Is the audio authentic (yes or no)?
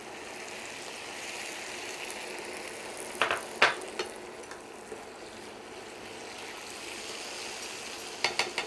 yes